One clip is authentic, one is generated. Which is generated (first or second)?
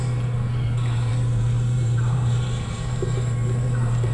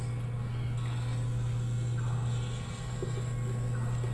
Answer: first